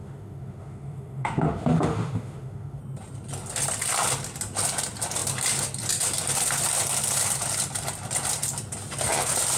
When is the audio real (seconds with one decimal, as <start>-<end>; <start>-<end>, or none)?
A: 2.8-9.6